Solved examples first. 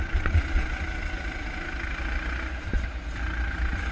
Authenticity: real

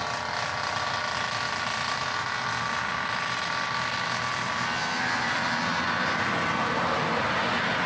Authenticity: real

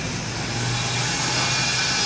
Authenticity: real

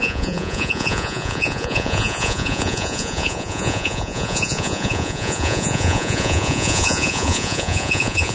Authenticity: fake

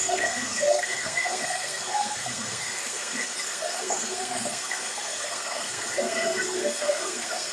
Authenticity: fake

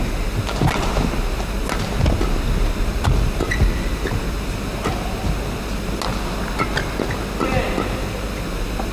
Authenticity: real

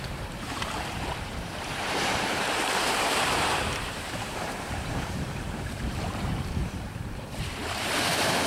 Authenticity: fake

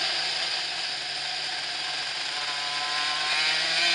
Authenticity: real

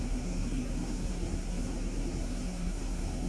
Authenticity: fake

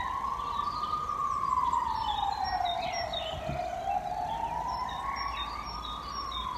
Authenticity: real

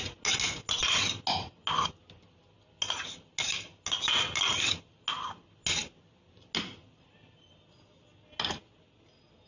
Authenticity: real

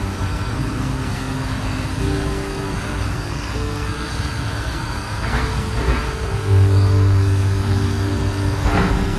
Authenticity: fake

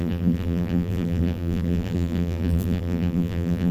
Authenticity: fake